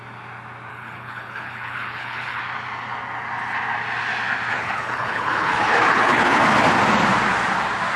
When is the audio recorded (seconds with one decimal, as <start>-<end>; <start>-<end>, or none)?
0.0-0.7; 2.4-4.5; 6.4-8.0